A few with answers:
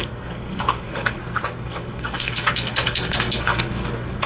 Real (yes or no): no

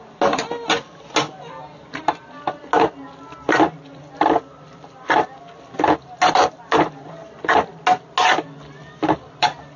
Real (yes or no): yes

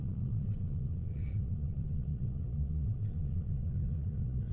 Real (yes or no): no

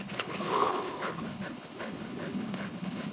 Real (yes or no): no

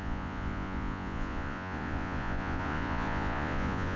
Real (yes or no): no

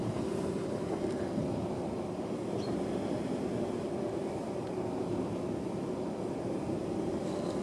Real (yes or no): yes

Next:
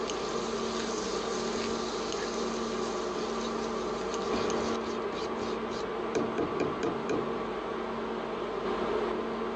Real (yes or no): yes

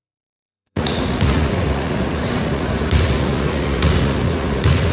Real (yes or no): no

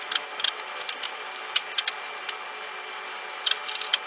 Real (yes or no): yes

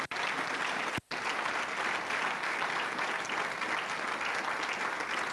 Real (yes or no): yes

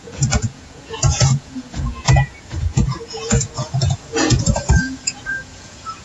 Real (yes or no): no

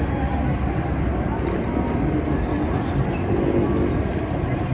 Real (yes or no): yes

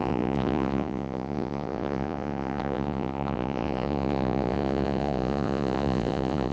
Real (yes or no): no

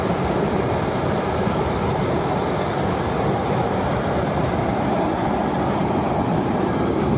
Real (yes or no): no